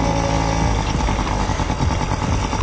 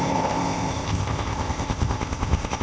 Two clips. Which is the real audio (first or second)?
first